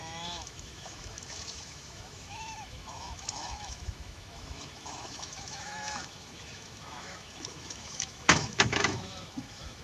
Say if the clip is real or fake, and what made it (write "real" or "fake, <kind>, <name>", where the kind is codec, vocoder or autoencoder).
fake, autoencoder, DAC-VAE